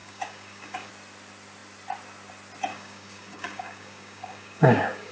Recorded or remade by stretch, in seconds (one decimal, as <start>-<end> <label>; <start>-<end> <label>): 0.0-0.9 remade; 0.9-2.7 recorded; 2.7-5.1 remade